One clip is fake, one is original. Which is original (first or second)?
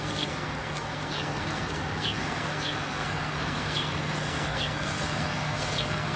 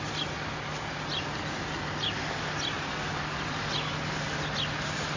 second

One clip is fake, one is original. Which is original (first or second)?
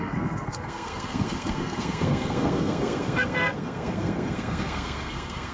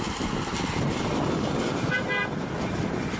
second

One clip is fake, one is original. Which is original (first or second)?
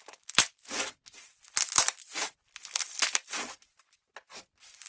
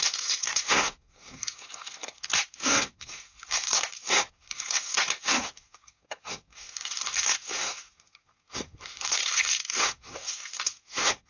first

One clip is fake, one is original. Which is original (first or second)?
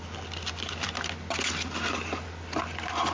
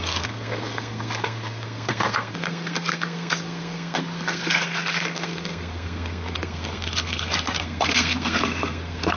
first